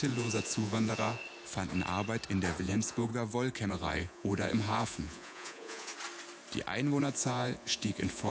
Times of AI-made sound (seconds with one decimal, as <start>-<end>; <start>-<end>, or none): 0.0-1.2; 2.6-3.1; 3.7-5.9; 7.0-8.3